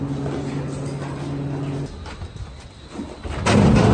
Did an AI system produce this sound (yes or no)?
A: no